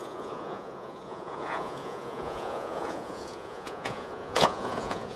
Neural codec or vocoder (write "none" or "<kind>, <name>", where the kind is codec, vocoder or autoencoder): vocoder, Vocos